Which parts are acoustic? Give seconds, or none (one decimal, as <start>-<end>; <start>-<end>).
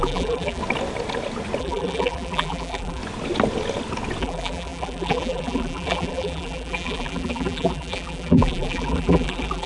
0.6-1.6; 3.0-4.2